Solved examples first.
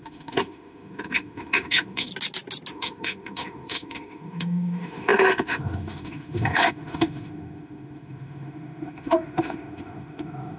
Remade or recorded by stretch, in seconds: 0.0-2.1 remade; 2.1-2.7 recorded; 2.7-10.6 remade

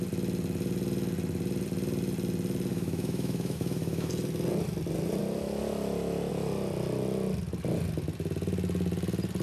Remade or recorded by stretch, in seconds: 0.0-2.7 recorded; 2.7-4.1 remade; 4.1-9.4 recorded